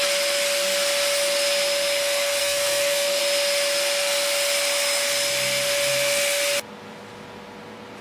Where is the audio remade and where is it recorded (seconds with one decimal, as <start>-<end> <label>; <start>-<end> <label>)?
0.0-2.4 recorded; 2.4-3.2 remade; 3.2-8.0 recorded